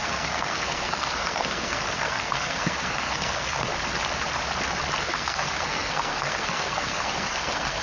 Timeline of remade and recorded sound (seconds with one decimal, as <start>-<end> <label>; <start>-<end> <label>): 0.0-3.7 remade; 3.7-5.0 recorded; 5.0-7.8 remade